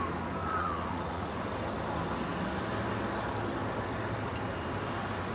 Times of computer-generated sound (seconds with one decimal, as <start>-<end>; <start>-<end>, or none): 0.4-1.3